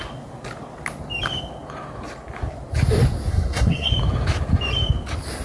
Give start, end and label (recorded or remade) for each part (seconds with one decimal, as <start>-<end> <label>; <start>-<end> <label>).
0.0-3.3 recorded; 3.3-3.9 remade; 3.9-5.4 recorded